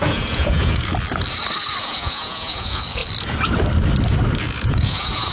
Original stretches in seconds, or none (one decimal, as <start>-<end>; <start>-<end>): 0.9-1.8; 3.0-4.4